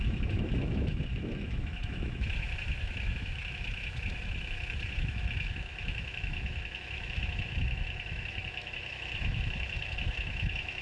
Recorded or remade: remade